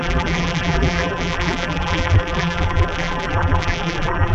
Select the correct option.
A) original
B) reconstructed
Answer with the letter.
B